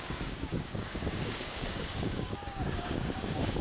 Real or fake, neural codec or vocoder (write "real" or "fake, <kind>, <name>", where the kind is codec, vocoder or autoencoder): fake, codec, DAC